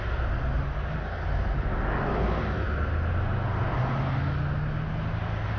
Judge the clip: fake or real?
real